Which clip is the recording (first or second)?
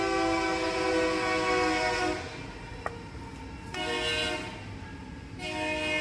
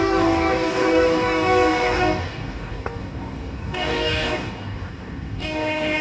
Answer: first